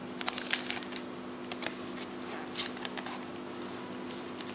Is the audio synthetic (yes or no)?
no